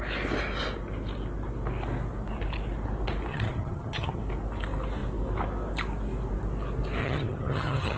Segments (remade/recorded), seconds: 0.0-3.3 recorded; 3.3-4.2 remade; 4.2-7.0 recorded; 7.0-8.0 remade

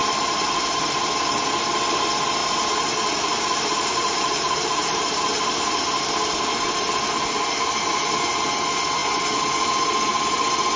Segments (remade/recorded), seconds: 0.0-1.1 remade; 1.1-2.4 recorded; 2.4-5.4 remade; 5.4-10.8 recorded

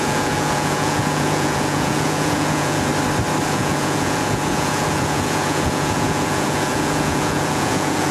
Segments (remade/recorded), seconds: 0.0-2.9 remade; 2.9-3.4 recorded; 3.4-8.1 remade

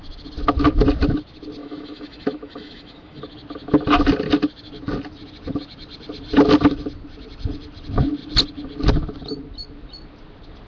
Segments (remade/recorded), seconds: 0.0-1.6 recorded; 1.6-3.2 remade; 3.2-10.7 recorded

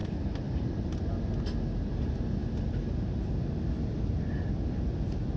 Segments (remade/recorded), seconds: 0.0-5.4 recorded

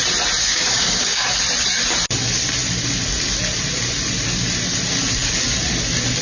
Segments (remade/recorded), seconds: 0.0-0.4 recorded; 0.4-1.2 remade; 1.2-6.2 recorded

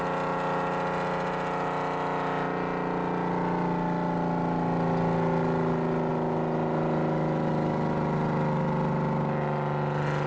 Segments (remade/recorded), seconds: 0.0-10.3 recorded

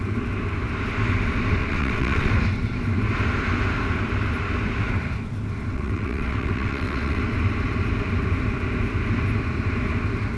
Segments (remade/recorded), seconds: 0.0-1.6 recorded; 1.6-2.3 remade; 2.3-5.7 recorded; 5.7-7.2 remade; 7.2-10.4 recorded